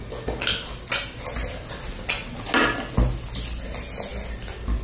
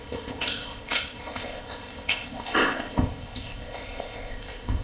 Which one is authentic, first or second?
first